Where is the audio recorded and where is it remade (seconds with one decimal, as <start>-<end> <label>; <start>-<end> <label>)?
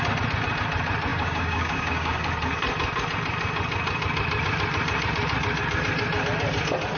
0.0-1.1 recorded; 1.1-2.3 remade; 2.3-7.0 recorded